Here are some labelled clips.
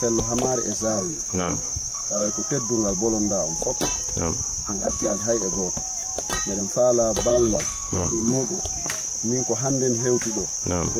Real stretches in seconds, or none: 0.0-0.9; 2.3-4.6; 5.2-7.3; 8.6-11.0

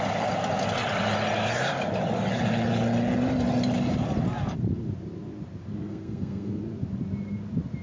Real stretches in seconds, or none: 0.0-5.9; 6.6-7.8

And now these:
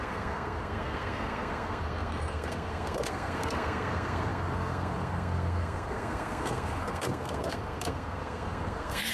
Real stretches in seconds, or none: none

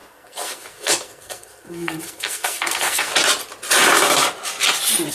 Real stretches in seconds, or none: 3.1-5.1

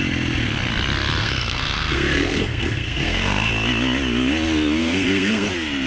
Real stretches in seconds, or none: 0.0-1.2; 3.5-4.8; 5.5-5.9

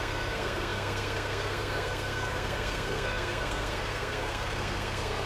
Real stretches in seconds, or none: none

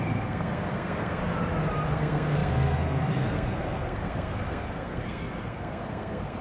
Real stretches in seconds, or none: 1.2-1.9